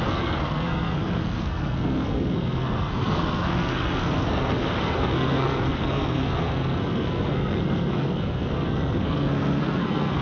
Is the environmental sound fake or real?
fake